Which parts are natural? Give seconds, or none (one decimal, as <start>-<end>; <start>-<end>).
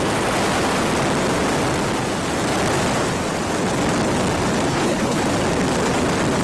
0.0-4.7; 5.2-6.4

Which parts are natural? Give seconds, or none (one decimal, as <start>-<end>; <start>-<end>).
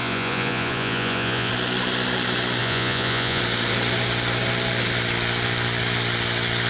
1.5-2.6; 3.4-6.7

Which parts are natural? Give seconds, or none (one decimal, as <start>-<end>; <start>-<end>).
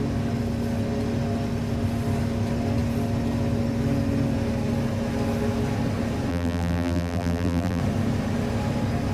0.0-6.3; 7.8-9.1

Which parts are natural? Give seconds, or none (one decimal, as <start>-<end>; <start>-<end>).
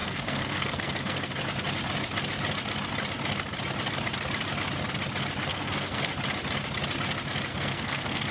1.3-5.5; 6.1-7.5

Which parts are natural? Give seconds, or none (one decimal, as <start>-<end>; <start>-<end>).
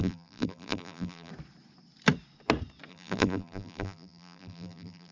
1.3-2.9